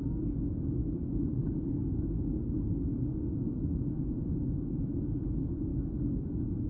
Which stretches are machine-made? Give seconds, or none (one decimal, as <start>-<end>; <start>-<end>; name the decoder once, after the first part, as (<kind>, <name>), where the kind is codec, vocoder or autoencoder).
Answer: 0.8-4.8 (codec, DAC); 5.7-6.7